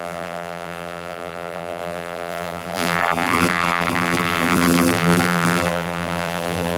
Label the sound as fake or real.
fake